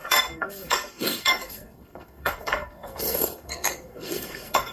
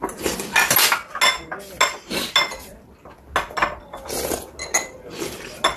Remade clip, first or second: first